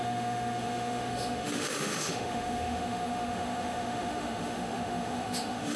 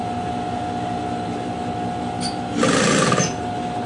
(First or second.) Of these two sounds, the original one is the second